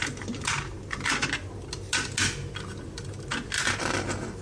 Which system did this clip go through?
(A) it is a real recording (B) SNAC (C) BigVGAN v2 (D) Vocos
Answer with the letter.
A